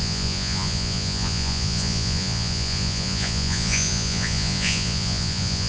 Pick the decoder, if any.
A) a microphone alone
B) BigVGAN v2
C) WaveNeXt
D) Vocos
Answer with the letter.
D